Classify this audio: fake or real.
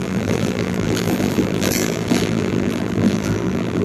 fake